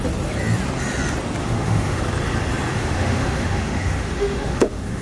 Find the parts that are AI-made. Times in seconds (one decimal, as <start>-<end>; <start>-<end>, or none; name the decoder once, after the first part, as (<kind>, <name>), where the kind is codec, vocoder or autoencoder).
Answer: 1.4-2.0 (autoencoder, DAC-VAE); 2.7-5.0